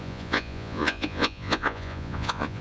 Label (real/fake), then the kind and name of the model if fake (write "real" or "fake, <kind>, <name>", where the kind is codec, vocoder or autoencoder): fake, vocoder, Vocos